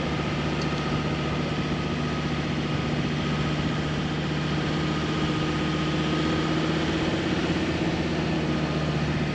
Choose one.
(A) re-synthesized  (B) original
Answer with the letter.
B